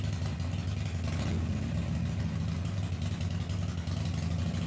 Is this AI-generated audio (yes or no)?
no